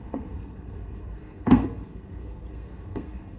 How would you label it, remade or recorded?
remade